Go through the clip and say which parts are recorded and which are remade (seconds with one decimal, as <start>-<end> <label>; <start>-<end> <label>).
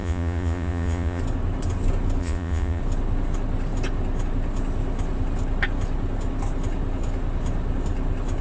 0.0-1.2 remade; 1.2-2.2 recorded; 2.2-2.8 remade; 2.8-8.4 recorded